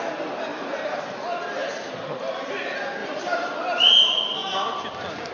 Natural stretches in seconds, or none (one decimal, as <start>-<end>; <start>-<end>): 0.0-0.5; 1.0-1.6; 2.4-3.0; 4.0-5.3